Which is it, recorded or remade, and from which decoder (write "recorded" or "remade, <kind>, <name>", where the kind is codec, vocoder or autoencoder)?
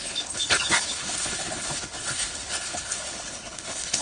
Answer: remade, codec, HILCodec